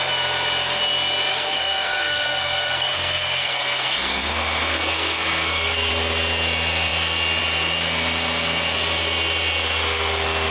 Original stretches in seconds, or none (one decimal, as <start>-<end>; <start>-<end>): 0.0-1.3; 5.9-10.5